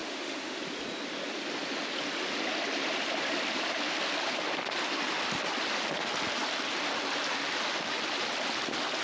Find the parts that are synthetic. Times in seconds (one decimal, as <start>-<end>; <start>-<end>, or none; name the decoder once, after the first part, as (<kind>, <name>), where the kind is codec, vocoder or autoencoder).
0.0-0.6 (autoencoder, DAC-VAE)